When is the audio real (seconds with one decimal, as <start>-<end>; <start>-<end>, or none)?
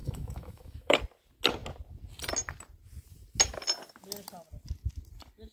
1.0-5.5